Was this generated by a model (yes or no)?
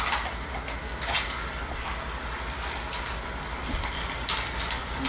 no